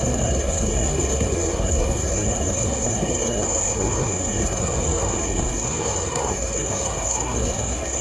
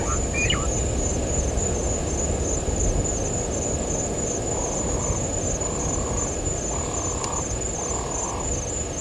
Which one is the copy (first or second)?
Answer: first